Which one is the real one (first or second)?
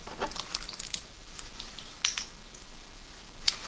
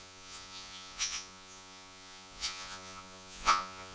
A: first